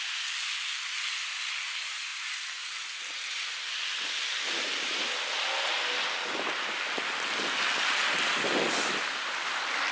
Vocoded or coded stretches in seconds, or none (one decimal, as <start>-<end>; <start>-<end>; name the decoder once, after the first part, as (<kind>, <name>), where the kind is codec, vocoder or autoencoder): none